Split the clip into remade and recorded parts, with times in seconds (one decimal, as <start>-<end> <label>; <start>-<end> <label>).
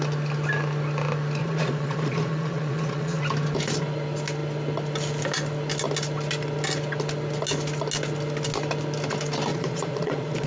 0.0-1.4 recorded; 1.4-3.2 remade; 3.2-9.5 recorded; 9.5-10.5 remade